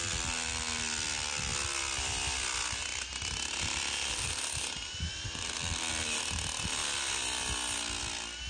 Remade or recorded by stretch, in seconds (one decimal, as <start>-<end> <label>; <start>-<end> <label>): 0.0-8.5 recorded